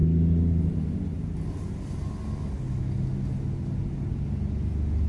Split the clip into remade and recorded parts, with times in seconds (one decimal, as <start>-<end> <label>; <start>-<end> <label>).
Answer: 0.0-5.1 recorded